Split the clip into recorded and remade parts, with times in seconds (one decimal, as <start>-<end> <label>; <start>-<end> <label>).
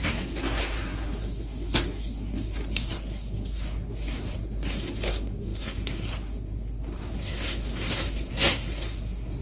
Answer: 0.0-9.4 remade